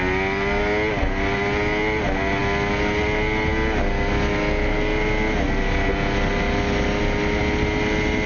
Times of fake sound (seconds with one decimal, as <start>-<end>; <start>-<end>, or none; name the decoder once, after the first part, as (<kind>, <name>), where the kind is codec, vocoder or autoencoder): none